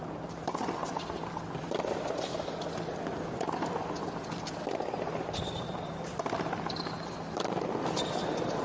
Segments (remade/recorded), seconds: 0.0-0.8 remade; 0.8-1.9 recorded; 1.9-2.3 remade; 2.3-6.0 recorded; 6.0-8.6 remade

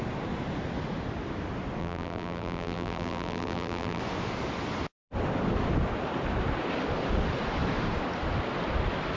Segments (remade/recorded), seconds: 0.0-1.8 recorded; 1.8-4.0 remade; 4.0-9.2 recorded